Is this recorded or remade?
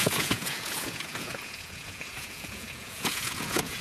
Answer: remade